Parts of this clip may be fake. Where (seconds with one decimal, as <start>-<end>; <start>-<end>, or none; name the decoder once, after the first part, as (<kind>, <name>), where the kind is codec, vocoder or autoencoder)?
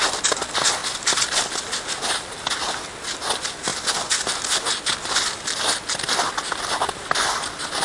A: none